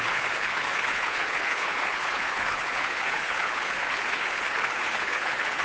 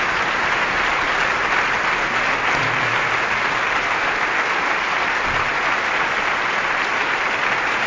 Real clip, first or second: second